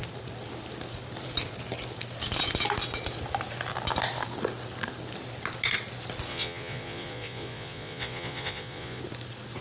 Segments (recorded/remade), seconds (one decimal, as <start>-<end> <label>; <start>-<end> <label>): 0.0-6.3 recorded; 6.3-9.0 remade; 9.0-9.6 recorded